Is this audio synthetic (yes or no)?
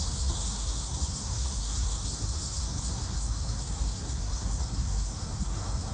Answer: yes